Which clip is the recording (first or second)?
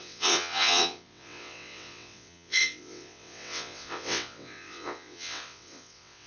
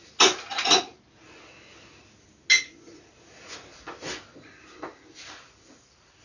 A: second